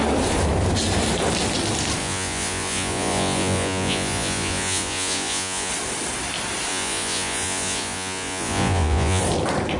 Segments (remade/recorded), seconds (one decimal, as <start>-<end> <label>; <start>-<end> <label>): 0.0-2.0 recorded; 2.0-5.7 remade; 5.7-6.7 recorded; 6.7-9.2 remade; 9.2-9.8 recorded

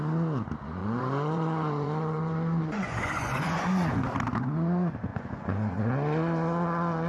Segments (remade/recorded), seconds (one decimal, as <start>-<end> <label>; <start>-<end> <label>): 0.0-0.8 recorded; 0.8-3.9 remade; 3.9-5.1 recorded; 5.1-5.9 remade; 5.9-7.1 recorded

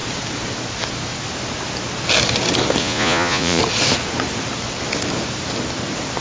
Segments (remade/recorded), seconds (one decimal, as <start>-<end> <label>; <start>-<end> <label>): 0.0-2.8 recorded; 2.8-3.6 remade; 3.6-6.2 recorded

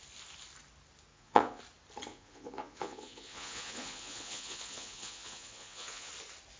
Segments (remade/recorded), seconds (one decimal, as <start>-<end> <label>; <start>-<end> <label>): 0.0-1.1 recorded; 1.1-1.6 remade; 1.6-2.1 recorded; 2.1-6.1 remade; 6.1-6.6 recorded